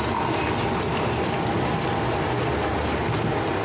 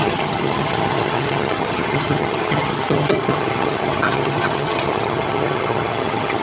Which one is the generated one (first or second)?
second